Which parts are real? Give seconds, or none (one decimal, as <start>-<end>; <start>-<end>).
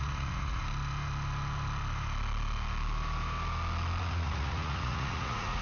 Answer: 0.6-4.0